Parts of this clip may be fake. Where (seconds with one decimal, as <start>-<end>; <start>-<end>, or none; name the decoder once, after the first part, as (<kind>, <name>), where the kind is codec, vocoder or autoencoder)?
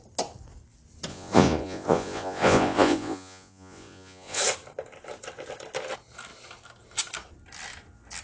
1.1-4.4 (vocoder, Vocos)